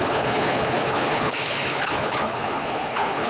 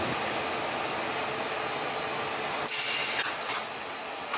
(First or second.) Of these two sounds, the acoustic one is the second